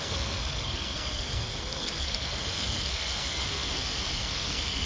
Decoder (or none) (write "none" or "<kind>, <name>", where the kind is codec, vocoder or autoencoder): codec, SNAC